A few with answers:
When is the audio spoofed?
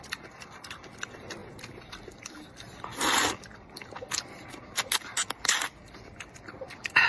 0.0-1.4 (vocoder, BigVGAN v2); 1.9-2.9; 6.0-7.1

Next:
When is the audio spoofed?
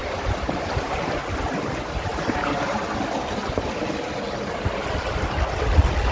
0.0-1.0 (vocoder, BigVGAN v2)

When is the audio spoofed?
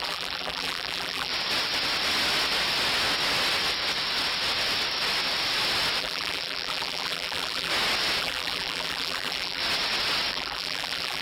0.0-1.3 (vocoder, BigVGAN v2); 6.0-7.7; 8.2-9.6; 10.3-11.2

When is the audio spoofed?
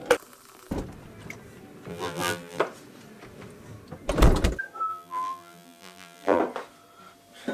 1.9-2.6 (vocoder, BigVGAN v2); 4.9-6.4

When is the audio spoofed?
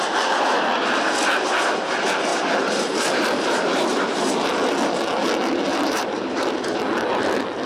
2.3-4.3 (vocoder, BigVGAN v2); 5.7-6.8